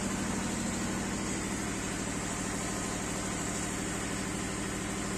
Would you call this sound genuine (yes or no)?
yes